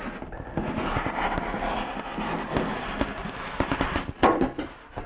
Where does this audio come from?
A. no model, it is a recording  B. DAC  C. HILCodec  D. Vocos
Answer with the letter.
A